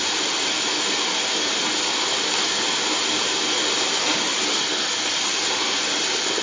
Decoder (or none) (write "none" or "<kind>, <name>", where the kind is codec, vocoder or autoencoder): none